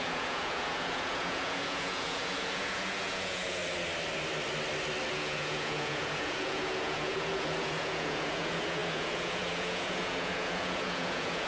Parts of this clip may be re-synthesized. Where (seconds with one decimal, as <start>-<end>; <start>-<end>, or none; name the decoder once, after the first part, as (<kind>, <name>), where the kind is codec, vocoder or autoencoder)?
0.0-3.6 (vocoder, Vocos); 5.1-11.5